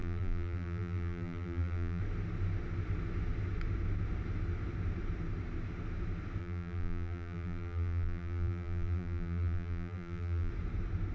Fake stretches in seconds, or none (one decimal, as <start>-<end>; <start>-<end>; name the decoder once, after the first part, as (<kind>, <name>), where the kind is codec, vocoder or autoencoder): 0.0-2.0 (vocoder, BigVGAN v2); 6.4-10.5